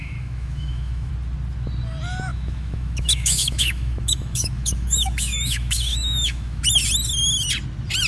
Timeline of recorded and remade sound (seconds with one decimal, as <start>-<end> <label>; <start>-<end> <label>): 0.0-1.1 remade; 1.1-2.3 recorded; 2.3-6.6 remade; 6.6-8.1 recorded